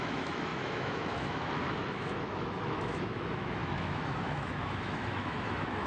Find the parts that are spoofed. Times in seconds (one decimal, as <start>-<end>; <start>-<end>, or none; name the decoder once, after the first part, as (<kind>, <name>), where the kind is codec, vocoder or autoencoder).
0.0-5.9 (autoencoder, DAC-VAE)